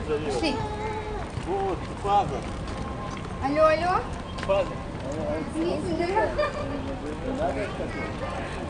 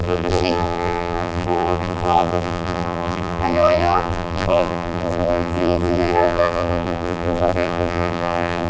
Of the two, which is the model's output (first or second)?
second